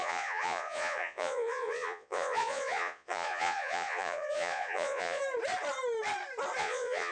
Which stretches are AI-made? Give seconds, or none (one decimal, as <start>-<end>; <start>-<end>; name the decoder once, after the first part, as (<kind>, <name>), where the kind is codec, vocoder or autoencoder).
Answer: 0.0-5.2 (vocoder, Vocos); 6.6-7.1